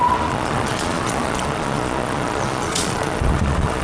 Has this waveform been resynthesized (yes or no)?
yes